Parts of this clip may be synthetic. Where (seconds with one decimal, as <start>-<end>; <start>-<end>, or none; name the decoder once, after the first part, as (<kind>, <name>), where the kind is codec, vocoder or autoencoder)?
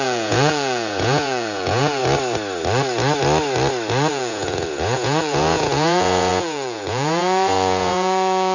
0.0-2.0 (vocoder, Vocos); 4.1-8.5